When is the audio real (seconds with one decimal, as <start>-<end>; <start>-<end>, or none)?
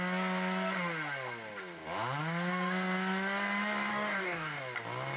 0.0-3.9; 4.6-5.2